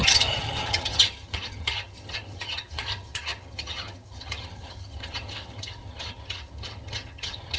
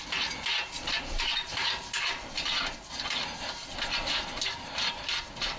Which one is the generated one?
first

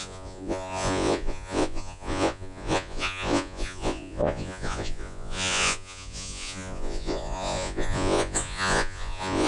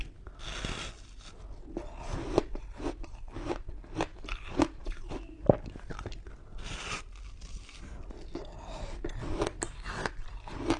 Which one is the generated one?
first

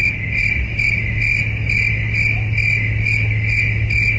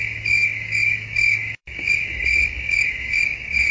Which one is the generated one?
second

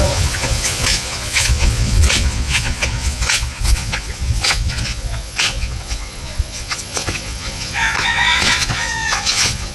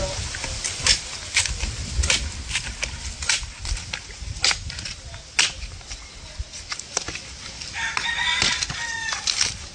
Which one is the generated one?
first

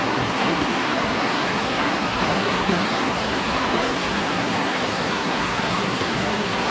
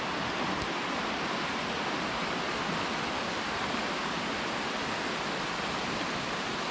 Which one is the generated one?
first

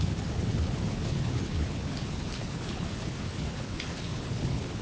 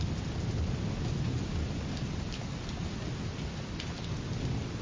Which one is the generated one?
first